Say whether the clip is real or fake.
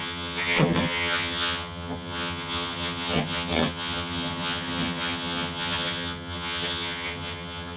fake